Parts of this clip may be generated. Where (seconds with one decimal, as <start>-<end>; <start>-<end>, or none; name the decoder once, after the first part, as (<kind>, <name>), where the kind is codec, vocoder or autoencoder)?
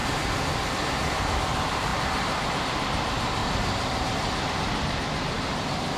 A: 3.4-4.5 (vocoder, BigVGAN v2)